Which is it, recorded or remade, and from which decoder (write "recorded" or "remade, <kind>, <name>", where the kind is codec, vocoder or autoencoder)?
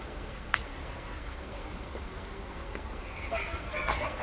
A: remade, codec, SNAC